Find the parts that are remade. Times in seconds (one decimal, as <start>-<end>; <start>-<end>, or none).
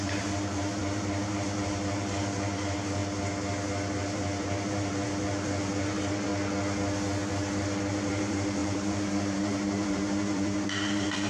0.0-3.0; 4.0-6.3; 7.3-11.3